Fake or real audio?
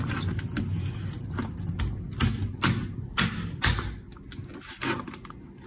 real